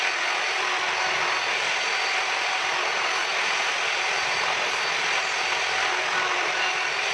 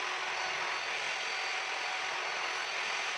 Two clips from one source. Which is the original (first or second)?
second